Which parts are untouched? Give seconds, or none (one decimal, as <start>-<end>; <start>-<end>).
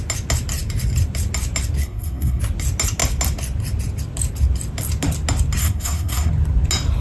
0.0-1.8; 2.4-5.6; 6.3-7.0